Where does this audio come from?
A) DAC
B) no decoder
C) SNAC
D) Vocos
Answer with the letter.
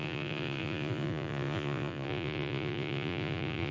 D